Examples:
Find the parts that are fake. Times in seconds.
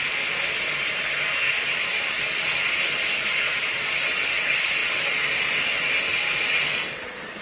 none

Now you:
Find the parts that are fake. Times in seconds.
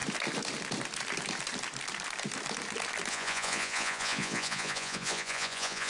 3.1-5.9 (vocoder, Vocos)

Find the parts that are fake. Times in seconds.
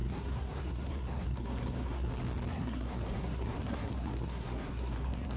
0.0-2.1 (codec, SNAC); 2.5-5.4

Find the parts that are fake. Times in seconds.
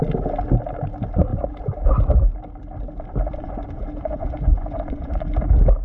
3.3-5.3 (vocoder, Vocos)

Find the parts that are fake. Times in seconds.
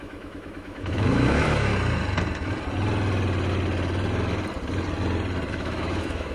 0.0-1.7 (autoencoder, DAC-VAE); 5.5-6.3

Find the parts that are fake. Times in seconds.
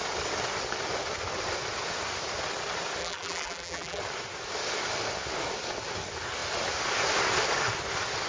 3.0-4.0 (vocoder, BigVGAN v2)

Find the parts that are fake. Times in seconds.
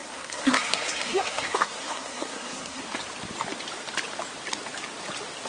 0.0-2.8 (codec, SNAC)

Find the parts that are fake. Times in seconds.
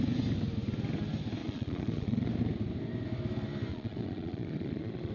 1.4-2.3 (vocoder, Vocos); 3.7-5.1